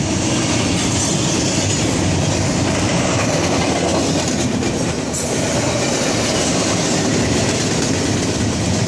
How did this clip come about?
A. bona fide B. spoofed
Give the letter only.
A